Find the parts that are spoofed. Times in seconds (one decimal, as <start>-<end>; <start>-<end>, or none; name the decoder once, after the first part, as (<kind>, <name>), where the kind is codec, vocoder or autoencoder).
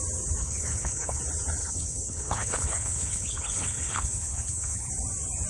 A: 0.4-1.2 (codec, HILCodec); 1.6-4.9